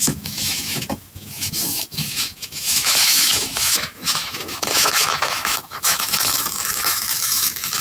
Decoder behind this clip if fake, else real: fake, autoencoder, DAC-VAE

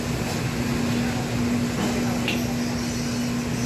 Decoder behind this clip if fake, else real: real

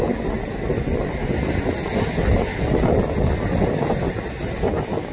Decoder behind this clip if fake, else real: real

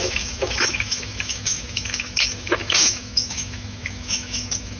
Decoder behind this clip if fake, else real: fake, autoencoder, DAC-VAE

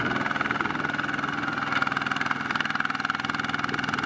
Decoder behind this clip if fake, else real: real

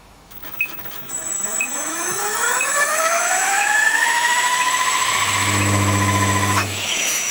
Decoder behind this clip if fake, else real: fake, autoencoder, DAC-VAE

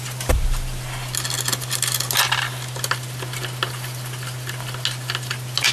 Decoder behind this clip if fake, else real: real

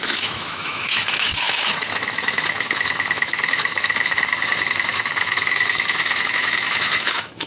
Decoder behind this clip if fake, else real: fake, autoencoder, DAC-VAE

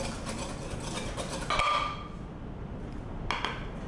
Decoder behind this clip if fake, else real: real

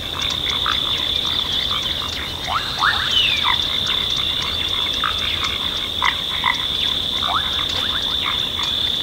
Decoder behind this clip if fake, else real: real